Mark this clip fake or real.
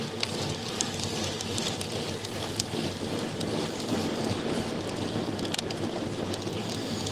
real